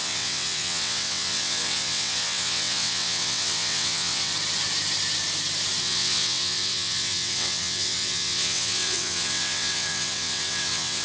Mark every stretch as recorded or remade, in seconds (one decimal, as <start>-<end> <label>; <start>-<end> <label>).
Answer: 0.0-4.3 remade; 4.3-5.8 recorded; 5.8-11.0 remade